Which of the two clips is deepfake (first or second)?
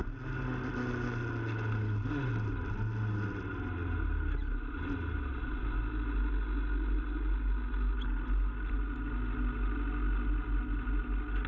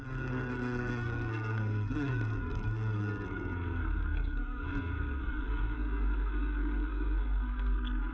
second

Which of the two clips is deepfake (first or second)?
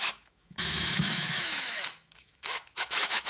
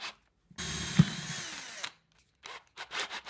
first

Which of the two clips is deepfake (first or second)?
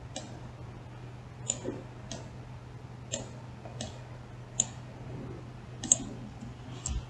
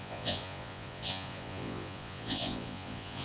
second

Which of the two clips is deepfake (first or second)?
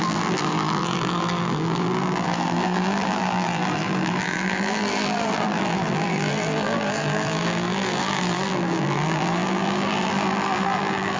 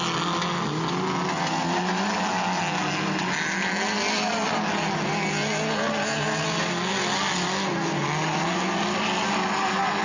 first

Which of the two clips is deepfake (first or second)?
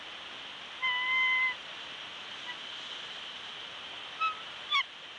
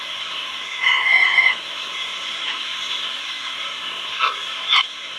second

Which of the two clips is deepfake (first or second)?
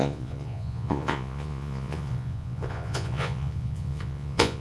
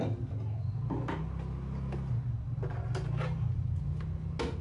first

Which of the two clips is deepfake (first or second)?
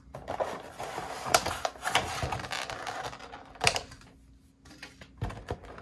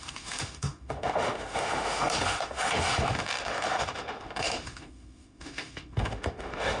second